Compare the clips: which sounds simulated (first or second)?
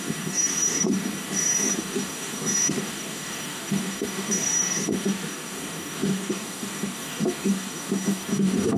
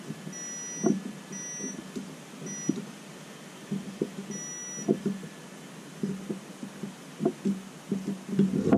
first